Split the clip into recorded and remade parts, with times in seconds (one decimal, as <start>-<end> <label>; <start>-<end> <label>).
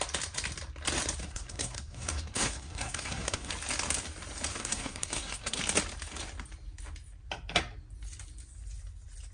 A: 0.0-1.2 recorded; 1.2-3.5 remade; 3.5-4.5 recorded; 4.5-5.6 remade; 5.6-9.3 recorded